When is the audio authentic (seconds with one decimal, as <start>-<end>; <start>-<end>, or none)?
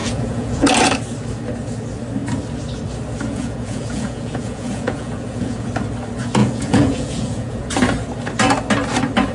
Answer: 0.7-3.3; 5.7-6.4; 7.7-9.3